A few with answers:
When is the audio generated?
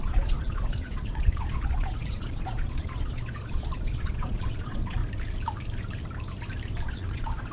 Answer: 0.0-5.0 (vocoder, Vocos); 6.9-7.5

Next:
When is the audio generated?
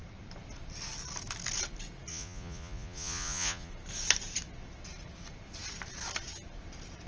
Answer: 2.1-3.7 (vocoder, Vocos)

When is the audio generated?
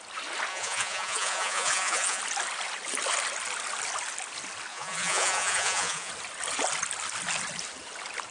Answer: 0.5-2.2 (vocoder, Vocos); 4.7-6.1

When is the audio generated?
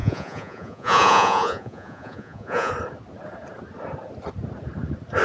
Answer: 0.0-2.7 (vocoder, Vocos)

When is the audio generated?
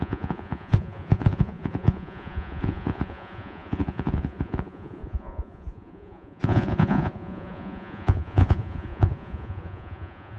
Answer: 0.0-10.4 (vocoder, Vocos)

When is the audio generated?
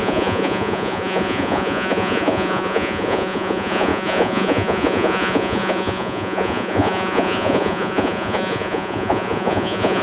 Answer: 0.0-10.0 (vocoder, Vocos)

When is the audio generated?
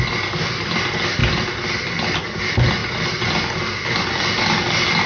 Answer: none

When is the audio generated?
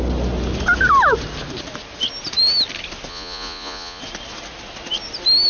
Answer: 3.1-4.0 (vocoder, Vocos)